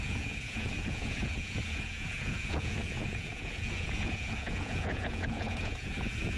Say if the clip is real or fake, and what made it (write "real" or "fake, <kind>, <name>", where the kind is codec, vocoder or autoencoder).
fake, vocoder, Vocos